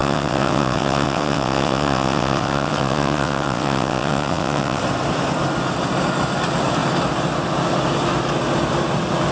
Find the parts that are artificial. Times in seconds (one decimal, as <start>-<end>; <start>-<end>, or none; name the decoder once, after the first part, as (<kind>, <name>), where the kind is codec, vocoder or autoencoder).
0.0-4.8 (vocoder, WaveNeXt)